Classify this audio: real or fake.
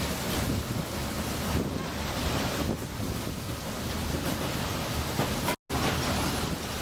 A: real